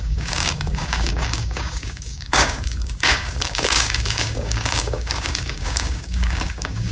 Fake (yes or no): yes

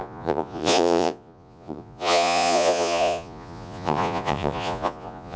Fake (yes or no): yes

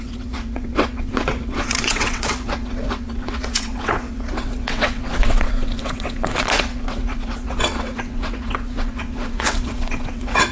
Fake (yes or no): yes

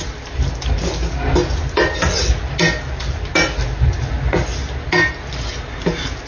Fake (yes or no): no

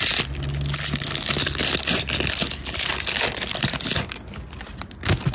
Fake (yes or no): no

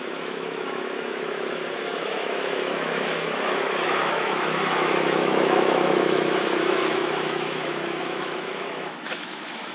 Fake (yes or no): yes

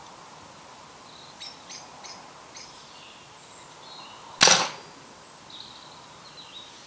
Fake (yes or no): no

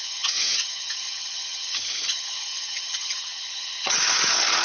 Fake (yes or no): yes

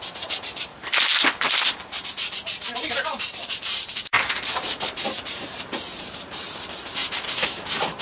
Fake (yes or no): yes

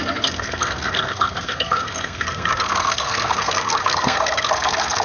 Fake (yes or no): yes